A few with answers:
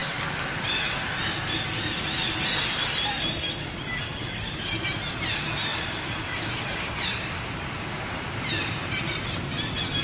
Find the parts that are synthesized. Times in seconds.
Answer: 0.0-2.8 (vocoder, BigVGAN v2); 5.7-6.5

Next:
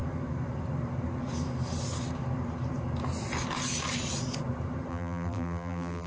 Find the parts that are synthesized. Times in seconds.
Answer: 4.9-6.1 (vocoder, BigVGAN v2)